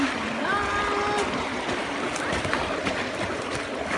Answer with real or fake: real